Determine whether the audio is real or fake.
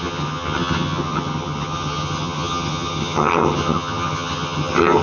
fake